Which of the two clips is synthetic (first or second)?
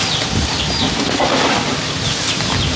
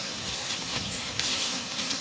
second